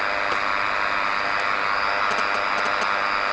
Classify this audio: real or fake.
real